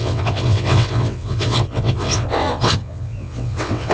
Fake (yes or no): yes